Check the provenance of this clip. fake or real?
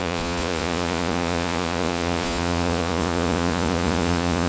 fake